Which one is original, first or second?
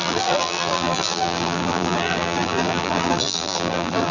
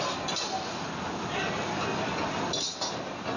second